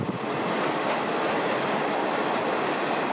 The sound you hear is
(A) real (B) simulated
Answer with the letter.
A